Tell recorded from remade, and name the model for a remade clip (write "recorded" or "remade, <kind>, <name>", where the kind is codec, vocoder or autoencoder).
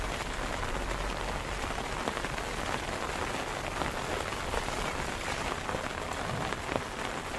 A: recorded